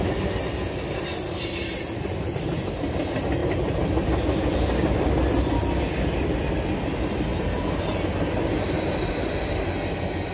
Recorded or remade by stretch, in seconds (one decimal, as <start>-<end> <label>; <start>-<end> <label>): 0.0-10.3 recorded